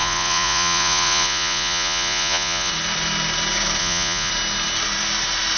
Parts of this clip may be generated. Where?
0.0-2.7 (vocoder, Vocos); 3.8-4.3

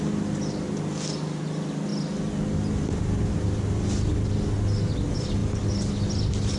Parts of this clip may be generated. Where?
none

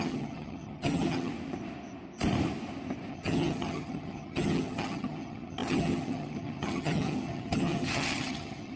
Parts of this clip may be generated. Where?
0.0-1.3 (vocoder, HiFi-GAN); 3.1-8.8

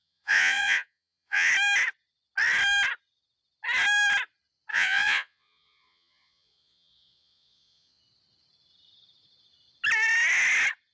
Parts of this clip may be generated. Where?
0.0-1.5 (vocoder, Vocos); 4.7-8.0

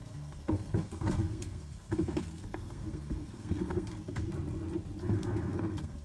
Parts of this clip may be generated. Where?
0.0-4.3 (codec, SNAC); 5.0-6.0

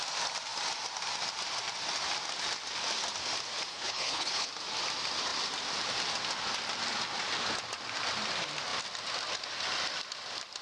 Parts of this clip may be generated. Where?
3.7-4.5 (codec, HILCodec)